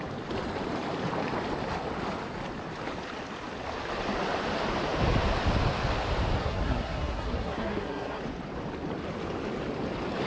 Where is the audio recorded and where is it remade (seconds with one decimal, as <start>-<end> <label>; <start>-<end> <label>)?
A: 0.0-6.4 recorded; 6.4-8.2 remade; 8.2-10.3 recorded